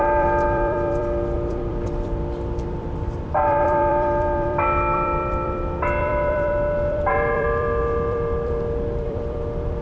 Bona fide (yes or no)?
no